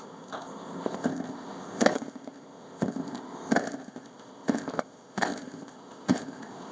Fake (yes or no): yes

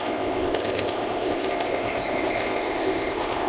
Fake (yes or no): yes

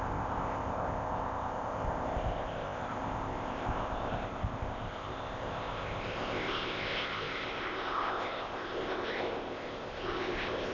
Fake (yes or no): yes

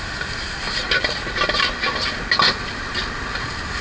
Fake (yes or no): no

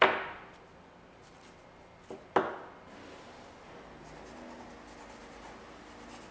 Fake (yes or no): no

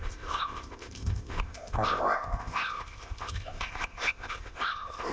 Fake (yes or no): yes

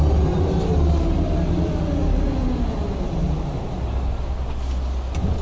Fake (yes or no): no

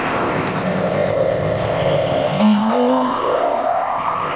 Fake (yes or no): yes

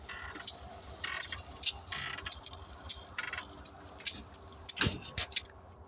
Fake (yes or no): no